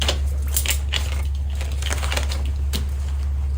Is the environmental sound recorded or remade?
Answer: recorded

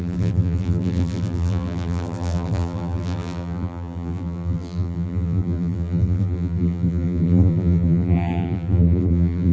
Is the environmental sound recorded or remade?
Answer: remade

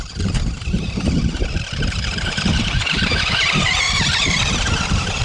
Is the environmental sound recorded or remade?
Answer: remade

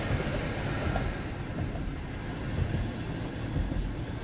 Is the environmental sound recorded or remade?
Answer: recorded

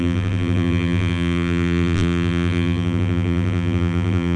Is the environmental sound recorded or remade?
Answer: remade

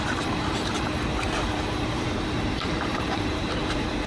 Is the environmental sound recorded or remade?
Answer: remade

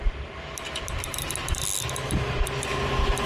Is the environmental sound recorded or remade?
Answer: recorded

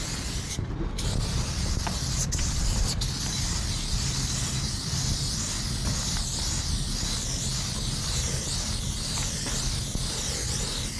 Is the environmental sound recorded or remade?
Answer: recorded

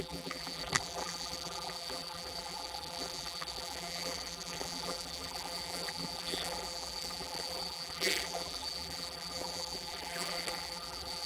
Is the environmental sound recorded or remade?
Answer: remade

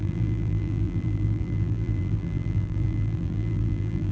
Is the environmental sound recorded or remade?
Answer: remade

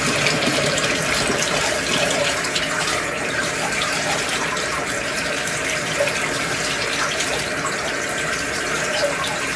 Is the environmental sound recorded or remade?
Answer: remade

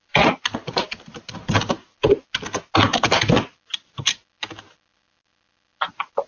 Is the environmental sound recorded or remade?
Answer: recorded